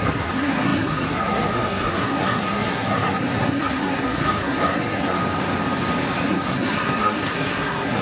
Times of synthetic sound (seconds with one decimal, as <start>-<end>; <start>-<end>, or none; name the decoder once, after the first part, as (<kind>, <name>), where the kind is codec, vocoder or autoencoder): 0.0-5.2 (codec, SNAC); 6.3-8.0